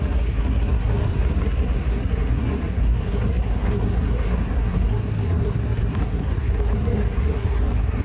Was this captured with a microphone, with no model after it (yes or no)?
no